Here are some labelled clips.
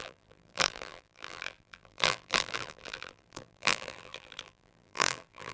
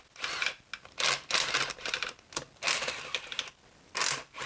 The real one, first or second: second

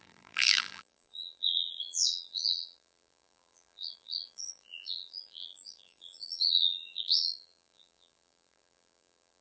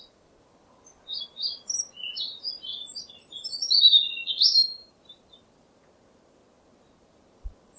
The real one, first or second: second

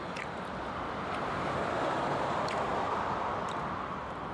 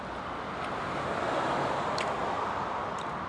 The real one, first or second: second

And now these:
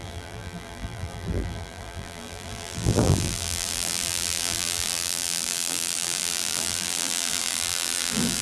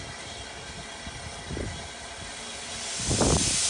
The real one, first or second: second